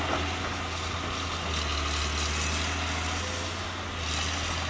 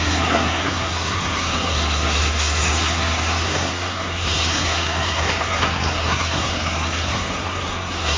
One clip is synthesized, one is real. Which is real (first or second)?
first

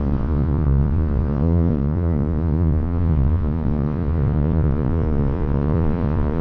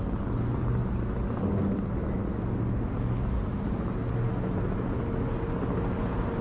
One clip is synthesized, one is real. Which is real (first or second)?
second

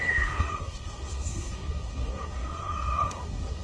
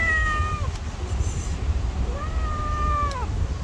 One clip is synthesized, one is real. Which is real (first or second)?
second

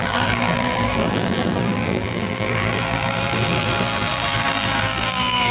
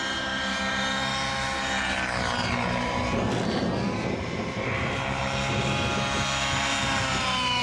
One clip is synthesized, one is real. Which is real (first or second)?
second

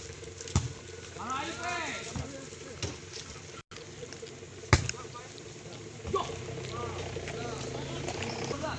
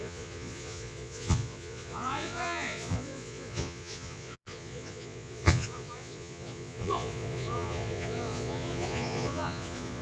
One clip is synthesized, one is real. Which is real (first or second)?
first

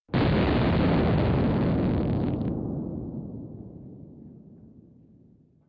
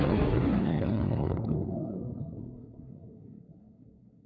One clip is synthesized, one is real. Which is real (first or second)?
first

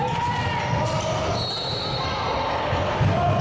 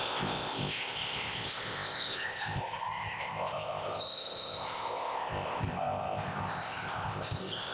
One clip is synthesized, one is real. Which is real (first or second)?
first